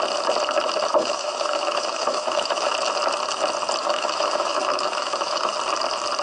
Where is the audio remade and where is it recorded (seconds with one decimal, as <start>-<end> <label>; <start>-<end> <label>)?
0.0-0.9 recorded; 0.9-2.7 remade; 2.7-3.8 recorded; 3.8-5.5 remade; 5.5-6.2 recorded